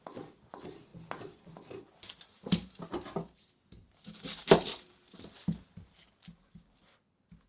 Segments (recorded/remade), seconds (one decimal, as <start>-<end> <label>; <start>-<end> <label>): 0.0-7.5 recorded